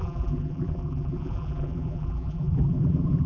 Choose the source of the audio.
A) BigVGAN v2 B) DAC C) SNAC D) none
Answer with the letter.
A